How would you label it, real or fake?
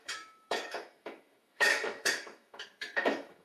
fake